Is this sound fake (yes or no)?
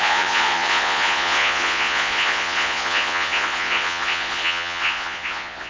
yes